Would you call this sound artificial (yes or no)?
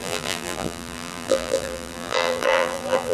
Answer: yes